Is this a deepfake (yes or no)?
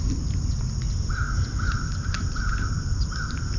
no